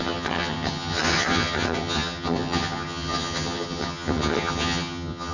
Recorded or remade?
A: remade